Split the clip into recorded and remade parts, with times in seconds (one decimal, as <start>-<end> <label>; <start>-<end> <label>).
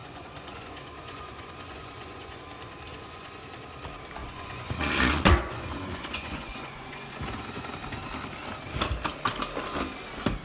0.0-2.4 remade; 2.4-2.9 recorded; 2.9-3.4 remade; 3.4-4.2 recorded; 4.2-7.7 remade; 7.7-10.4 recorded